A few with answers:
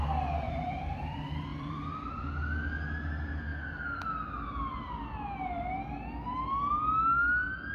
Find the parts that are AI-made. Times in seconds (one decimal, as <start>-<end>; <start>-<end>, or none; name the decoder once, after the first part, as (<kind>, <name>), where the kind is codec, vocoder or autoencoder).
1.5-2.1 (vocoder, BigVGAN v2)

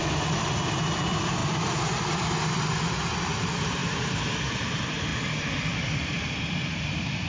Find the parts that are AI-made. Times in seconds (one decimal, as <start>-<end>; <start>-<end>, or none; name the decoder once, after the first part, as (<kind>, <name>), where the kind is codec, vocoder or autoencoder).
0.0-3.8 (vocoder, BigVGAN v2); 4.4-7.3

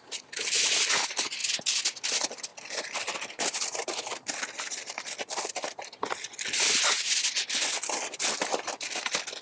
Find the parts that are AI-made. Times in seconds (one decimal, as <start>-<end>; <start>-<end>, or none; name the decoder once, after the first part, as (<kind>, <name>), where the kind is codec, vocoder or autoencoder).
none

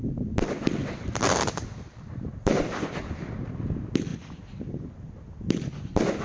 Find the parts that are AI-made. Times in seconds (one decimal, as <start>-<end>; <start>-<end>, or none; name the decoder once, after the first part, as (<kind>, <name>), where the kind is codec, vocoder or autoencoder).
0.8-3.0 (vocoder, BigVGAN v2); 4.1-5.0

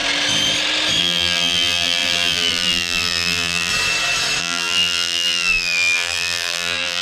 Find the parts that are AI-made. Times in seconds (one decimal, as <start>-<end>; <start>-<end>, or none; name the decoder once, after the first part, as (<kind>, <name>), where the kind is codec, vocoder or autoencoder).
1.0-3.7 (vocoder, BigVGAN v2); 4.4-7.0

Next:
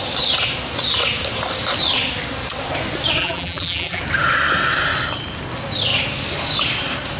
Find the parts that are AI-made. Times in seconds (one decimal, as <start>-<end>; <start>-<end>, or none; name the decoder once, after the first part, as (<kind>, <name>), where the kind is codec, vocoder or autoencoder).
3.2-4.0 (vocoder, BigVGAN v2)

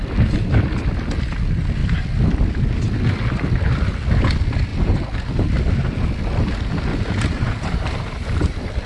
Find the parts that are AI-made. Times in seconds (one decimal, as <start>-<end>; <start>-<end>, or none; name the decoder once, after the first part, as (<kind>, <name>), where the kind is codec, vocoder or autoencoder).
6.9-8.9 (vocoder, BigVGAN v2)